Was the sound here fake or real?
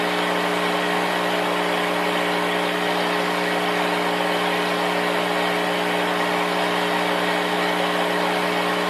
real